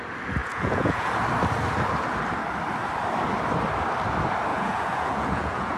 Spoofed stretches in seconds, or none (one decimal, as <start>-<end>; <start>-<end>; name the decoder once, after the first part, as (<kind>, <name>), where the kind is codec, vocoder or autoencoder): 0.4-1.1 (vocoder, Vocos); 4.5-5.8